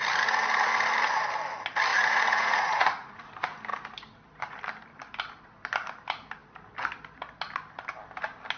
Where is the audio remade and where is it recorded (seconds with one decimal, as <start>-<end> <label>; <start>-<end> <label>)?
0.0-1.9 recorded; 1.9-3.3 remade; 3.3-8.6 recorded